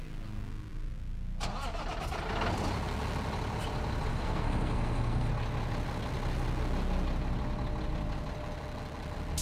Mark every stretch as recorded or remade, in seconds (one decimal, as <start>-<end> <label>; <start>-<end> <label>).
0.0-4.1 recorded; 4.1-5.3 remade; 5.3-9.4 recorded